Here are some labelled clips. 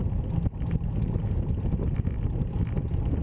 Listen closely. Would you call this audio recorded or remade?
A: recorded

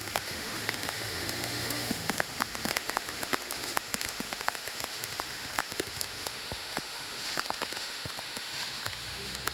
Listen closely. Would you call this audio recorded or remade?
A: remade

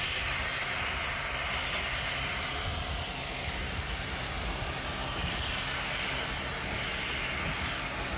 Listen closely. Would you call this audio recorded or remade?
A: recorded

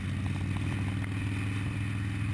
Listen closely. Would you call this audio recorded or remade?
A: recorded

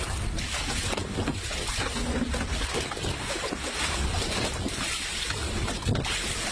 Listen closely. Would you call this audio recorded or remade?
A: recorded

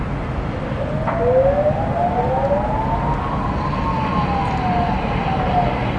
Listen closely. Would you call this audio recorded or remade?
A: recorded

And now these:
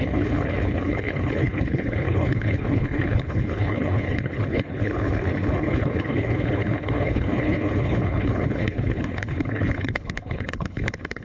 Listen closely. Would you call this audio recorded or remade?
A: remade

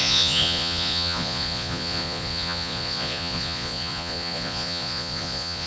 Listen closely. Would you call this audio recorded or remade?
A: remade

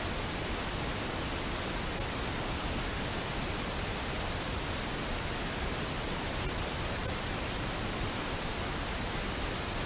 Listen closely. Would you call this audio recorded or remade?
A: recorded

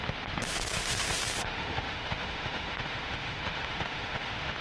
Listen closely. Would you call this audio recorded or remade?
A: remade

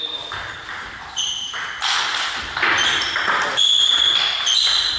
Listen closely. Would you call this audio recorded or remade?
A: remade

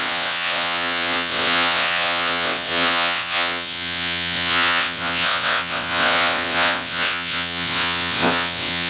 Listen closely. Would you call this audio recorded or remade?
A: remade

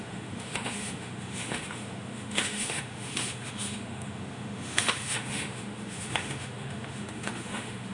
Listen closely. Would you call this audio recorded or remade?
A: remade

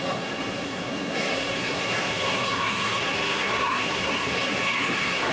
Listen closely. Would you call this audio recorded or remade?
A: remade